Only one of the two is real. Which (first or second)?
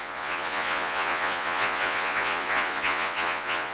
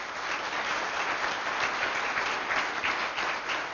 second